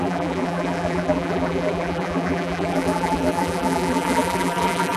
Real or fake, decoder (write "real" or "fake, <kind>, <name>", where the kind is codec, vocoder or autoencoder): fake, vocoder, BigVGAN v2